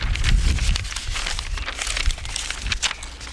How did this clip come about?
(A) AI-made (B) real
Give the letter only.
B